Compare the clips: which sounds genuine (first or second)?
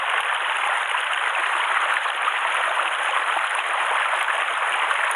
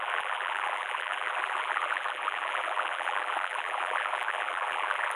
first